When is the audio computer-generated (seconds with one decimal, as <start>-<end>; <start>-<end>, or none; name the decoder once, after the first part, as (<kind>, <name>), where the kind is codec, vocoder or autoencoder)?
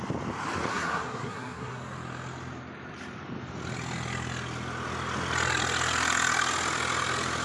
0.7-1.8 (codec, SNAC)